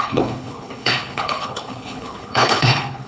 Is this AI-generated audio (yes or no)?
yes